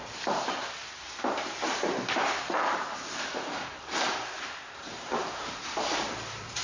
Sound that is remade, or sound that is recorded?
remade